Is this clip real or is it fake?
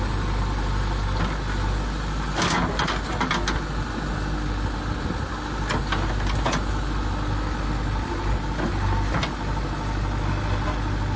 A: real